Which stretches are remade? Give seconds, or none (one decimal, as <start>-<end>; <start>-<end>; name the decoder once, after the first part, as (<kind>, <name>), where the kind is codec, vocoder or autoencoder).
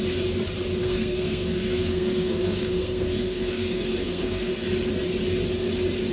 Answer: 0.8-4.5 (codec, SNAC)